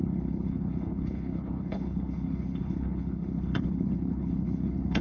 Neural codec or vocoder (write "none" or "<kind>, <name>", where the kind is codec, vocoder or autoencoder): codec, HILCodec